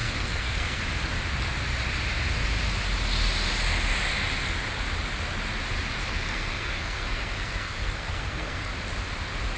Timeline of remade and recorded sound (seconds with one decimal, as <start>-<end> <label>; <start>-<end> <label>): 0.0-0.8 remade; 0.8-6.0 recorded; 6.0-8.7 remade; 8.7-9.6 recorded